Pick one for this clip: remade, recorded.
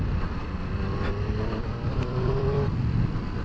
remade